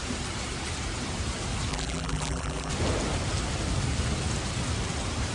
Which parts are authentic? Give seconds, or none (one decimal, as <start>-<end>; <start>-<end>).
0.0-1.7; 2.7-5.3